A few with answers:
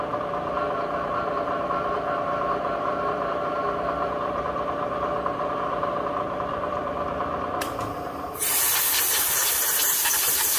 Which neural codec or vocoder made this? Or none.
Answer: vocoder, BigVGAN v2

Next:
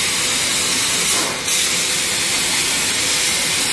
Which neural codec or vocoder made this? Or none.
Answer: none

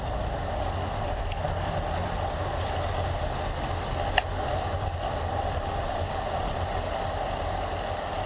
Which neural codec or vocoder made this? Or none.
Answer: none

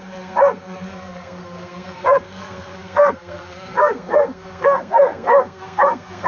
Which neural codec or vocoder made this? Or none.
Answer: codec, SNAC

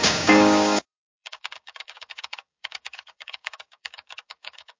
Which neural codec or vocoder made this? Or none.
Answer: codec, DAC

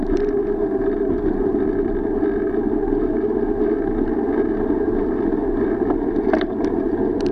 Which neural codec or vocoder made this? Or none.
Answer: none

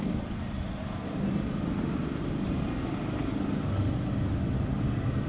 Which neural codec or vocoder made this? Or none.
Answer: none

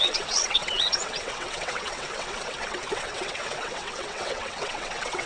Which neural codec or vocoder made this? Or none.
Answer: vocoder, WaveNeXt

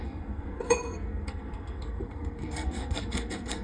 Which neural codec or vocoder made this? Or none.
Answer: codec, SNAC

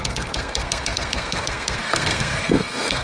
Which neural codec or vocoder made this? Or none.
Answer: codec, SNAC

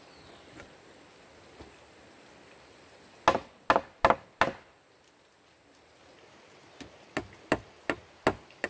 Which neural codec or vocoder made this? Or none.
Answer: none